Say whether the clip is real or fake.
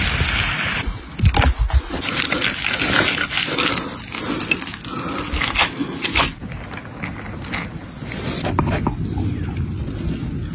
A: real